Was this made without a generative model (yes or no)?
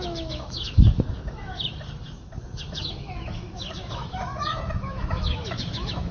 no